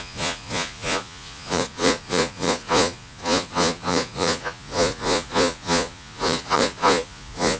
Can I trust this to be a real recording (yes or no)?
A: no